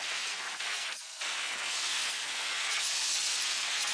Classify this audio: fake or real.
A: fake